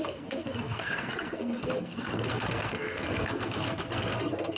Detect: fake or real fake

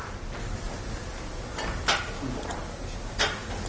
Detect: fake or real real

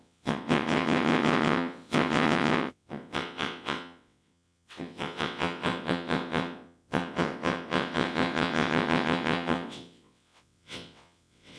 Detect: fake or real fake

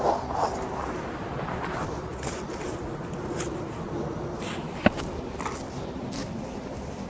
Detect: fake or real fake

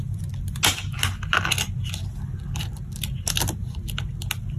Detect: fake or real real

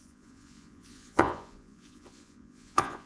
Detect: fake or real fake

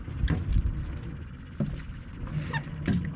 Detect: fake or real real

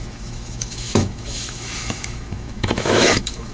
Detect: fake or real fake